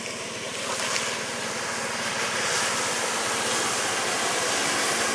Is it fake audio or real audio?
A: real